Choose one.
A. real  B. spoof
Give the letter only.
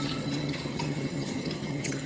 B